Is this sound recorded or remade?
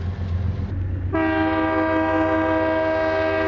recorded